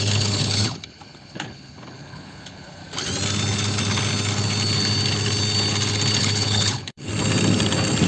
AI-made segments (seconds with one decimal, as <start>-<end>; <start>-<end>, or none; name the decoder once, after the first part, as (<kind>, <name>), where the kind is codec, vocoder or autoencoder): 0.0-2.8 (codec, HILCodec); 6.2-7.1